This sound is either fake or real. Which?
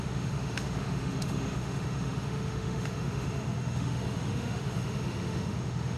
fake